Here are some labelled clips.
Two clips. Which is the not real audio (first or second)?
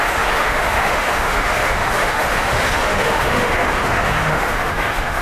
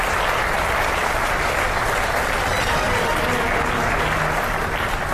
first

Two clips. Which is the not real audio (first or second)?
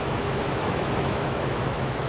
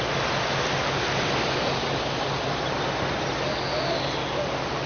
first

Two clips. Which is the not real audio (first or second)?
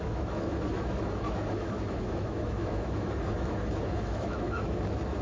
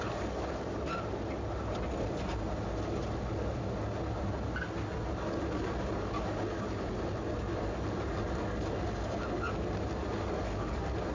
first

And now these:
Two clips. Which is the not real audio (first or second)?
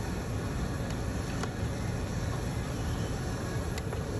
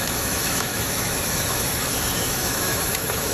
second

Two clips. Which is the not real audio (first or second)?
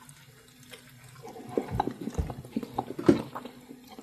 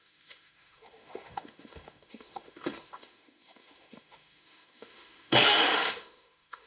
second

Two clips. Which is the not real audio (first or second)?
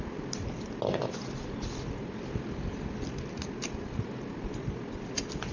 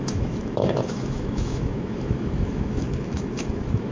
second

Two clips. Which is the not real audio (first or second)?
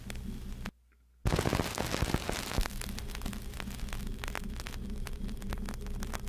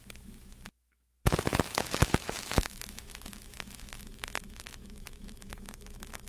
second